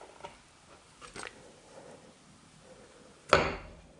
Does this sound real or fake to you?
real